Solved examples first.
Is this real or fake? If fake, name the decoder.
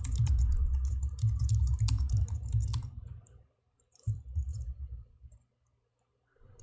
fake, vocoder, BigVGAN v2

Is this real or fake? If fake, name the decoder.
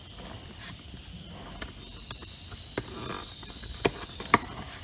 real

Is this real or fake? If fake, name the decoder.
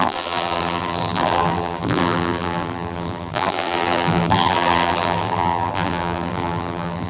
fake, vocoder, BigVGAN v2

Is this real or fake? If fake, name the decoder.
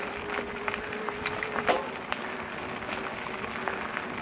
real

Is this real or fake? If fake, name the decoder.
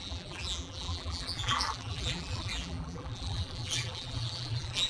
fake, vocoder, BigVGAN v2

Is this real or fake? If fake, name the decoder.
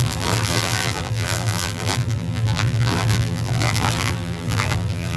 fake, vocoder, BigVGAN v2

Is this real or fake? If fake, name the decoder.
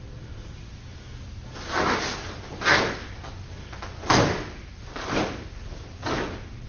real